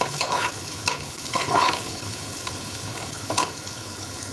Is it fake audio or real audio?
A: fake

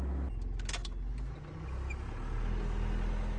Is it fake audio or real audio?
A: real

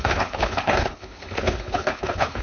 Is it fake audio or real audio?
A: fake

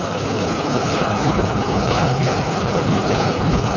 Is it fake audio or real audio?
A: fake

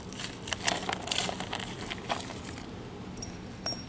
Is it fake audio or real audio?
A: real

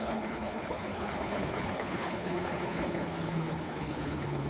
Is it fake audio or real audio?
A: fake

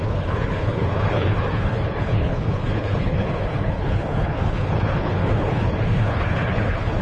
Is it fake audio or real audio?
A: fake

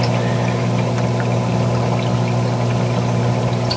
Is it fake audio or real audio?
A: real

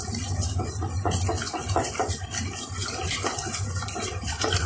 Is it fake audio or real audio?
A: real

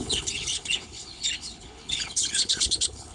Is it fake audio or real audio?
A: fake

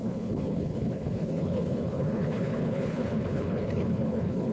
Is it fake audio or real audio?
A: fake